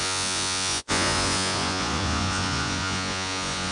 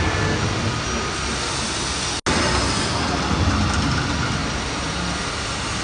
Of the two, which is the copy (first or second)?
first